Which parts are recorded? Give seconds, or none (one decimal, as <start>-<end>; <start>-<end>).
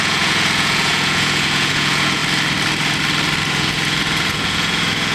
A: 2.2-3.5